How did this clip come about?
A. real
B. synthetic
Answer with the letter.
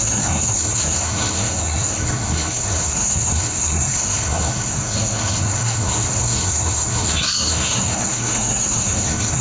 B